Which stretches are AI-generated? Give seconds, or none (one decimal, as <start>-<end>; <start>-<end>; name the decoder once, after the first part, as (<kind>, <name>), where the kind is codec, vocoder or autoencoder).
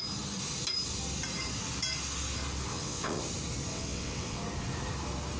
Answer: 2.7-3.2 (vocoder, WaveNeXt); 3.7-4.4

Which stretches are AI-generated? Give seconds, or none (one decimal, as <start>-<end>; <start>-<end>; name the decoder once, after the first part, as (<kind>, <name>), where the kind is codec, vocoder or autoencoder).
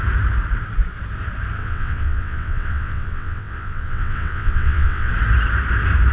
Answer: 1.6-5.1 (vocoder, WaveNeXt)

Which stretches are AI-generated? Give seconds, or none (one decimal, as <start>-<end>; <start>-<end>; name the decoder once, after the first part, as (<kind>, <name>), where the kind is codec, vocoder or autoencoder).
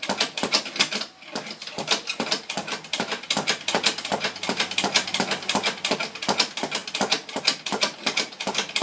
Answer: none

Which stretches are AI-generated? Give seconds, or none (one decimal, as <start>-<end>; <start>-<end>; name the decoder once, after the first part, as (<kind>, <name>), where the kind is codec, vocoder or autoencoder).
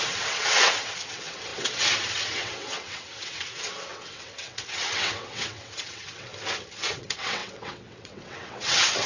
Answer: 0.0-6.3 (vocoder, WaveNeXt); 6.9-9.1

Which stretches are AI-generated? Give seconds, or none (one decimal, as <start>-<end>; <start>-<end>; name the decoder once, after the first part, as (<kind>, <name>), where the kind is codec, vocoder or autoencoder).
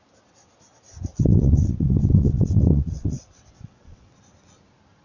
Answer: 1.1-4.1 (vocoder, WaveNeXt)